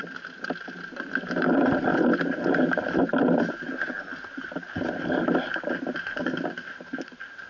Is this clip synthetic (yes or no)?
no